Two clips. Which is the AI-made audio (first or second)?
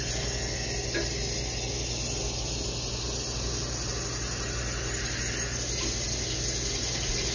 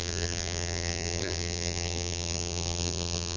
second